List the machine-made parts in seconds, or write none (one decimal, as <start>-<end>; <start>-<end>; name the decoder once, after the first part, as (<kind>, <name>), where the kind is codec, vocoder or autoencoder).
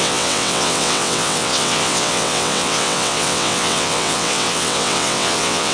0.0-5.7 (vocoder, WaveNeXt)